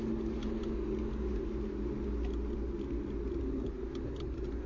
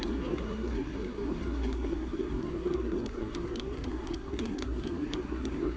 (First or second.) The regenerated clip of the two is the second